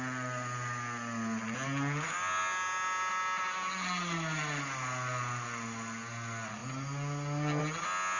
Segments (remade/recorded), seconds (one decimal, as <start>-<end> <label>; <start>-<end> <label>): 0.0-8.2 recorded